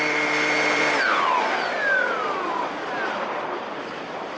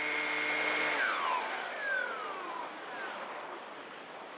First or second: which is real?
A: second